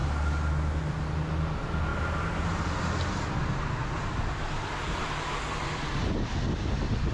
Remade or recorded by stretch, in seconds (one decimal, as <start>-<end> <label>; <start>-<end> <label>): 0.0-7.1 recorded